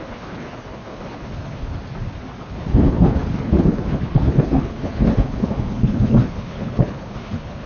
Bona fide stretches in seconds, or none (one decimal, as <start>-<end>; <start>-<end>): 1.8-2.4